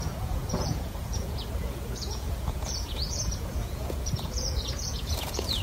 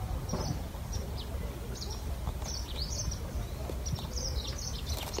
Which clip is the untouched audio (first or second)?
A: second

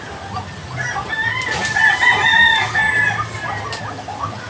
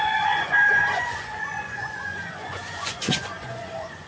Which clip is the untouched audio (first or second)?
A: first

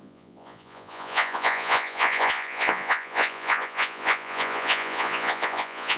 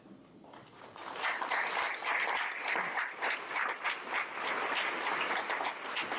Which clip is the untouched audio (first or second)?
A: second